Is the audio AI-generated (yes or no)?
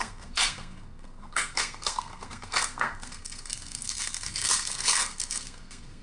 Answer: yes